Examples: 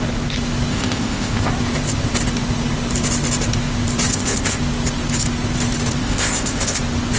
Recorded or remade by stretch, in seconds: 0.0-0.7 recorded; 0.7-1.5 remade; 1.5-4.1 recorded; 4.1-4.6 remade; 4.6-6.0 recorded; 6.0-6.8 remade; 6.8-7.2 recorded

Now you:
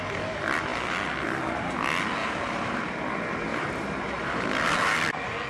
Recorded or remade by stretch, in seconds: 0.0-2.2 recorded; 2.2-2.8 remade; 2.8-3.5 recorded; 3.5-4.4 remade; 4.4-5.5 recorded

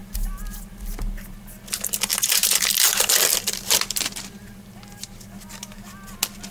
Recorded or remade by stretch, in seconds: 0.0-6.5 recorded

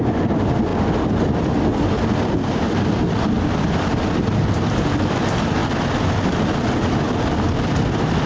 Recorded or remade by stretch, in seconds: 0.0-8.3 recorded